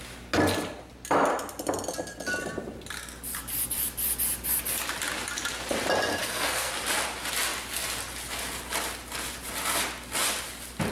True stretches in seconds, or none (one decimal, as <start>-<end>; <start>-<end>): 0.0-6.1; 6.7-10.9